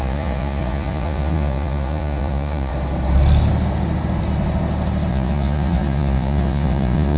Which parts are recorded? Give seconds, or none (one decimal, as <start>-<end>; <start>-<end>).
2.7-5.1